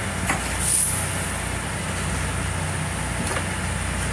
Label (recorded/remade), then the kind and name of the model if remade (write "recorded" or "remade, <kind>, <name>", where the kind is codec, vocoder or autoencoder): recorded